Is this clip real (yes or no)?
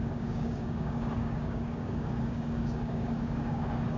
no